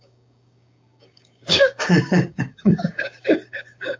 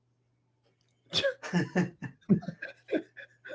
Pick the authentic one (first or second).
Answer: second